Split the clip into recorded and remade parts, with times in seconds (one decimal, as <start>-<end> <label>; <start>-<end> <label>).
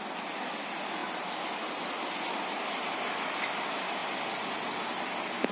0.0-5.5 recorded